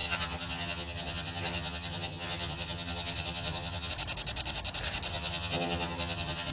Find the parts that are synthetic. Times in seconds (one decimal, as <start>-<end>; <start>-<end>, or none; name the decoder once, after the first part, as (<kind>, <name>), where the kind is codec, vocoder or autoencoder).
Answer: 0.0-3.9 (vocoder, HiFi-GAN); 5.1-6.5